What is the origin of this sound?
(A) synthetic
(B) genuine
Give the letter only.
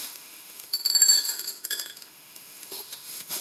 A